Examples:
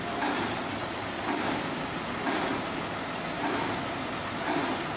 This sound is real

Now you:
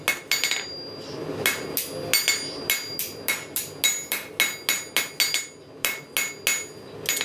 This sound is real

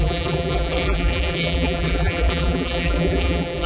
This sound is fake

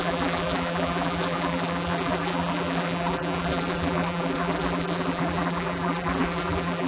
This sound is fake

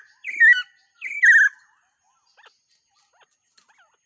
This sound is real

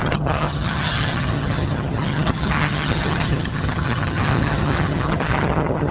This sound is fake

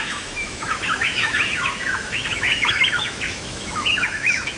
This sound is fake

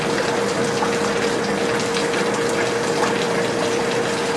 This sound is real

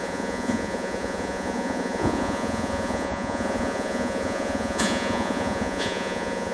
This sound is fake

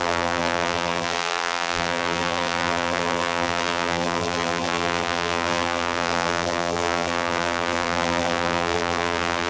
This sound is fake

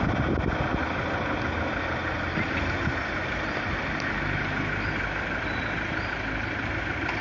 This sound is real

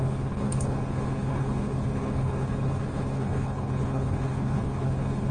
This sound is fake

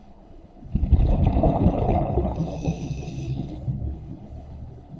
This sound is fake